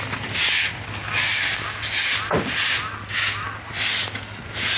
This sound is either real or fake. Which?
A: real